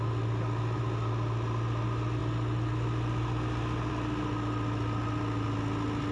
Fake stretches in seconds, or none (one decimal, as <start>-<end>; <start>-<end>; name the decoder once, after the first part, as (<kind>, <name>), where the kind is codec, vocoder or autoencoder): none